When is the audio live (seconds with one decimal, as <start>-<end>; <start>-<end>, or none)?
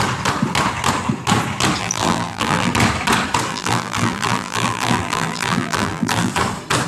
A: 0.0-1.8; 2.7-3.5; 6.3-6.9